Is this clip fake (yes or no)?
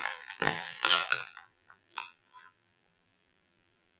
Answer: yes